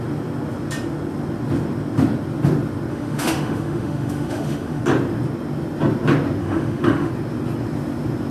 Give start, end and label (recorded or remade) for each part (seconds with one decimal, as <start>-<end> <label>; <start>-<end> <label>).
0.0-2.9 recorded; 2.9-4.8 remade; 4.8-6.4 recorded; 6.4-7.1 remade; 7.1-8.3 recorded